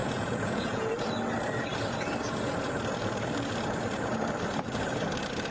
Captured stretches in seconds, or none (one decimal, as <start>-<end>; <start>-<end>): 0.9-5.5